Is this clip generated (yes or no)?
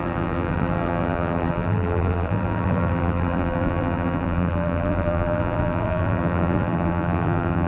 yes